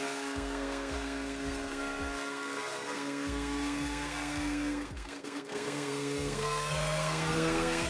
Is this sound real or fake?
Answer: fake